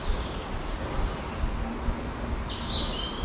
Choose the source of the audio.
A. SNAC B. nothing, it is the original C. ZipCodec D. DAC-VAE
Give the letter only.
B